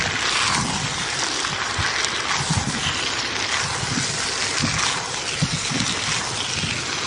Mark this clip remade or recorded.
recorded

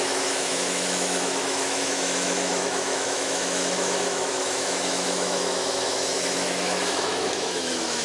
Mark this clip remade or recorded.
remade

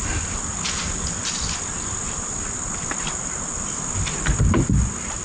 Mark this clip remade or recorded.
recorded